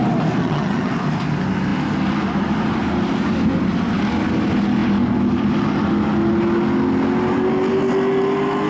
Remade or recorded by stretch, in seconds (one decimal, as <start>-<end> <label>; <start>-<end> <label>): 0.0-0.4 recorded; 0.4-0.9 remade; 0.9-8.7 recorded